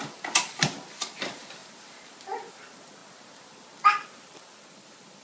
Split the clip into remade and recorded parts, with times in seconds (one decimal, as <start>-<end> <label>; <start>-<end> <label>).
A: 0.0-1.6 recorded; 1.6-2.2 remade; 2.2-5.2 recorded